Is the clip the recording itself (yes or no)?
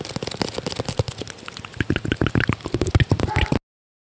yes